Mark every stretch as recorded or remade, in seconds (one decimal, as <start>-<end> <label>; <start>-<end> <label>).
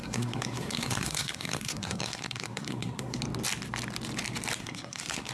0.0-3.2 remade; 3.2-4.6 recorded; 4.6-5.3 remade